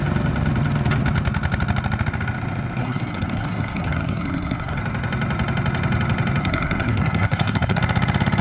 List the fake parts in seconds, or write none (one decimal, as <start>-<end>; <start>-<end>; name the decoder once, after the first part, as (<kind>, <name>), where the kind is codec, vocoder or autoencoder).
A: 2.8-4.8 (codec, SNAC); 6.4-7.8